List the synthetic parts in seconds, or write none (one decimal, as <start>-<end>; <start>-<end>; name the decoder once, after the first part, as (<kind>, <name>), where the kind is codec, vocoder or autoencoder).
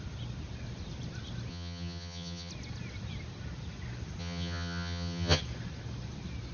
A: 1.5-2.5 (vocoder, HiFi-GAN); 4.2-5.4